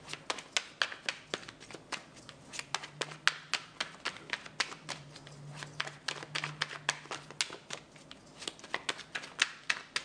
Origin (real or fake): real